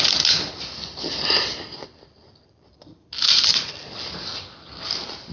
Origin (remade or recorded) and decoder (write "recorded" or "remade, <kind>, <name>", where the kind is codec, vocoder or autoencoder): remade, vocoder, BigVGAN v2